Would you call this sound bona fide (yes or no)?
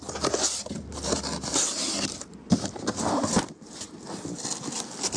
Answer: yes